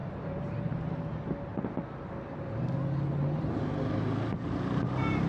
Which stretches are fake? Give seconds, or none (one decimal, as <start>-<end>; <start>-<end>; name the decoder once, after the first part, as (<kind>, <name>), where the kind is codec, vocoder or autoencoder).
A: none